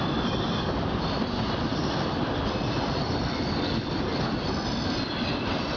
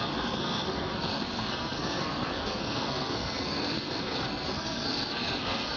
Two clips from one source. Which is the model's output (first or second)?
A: second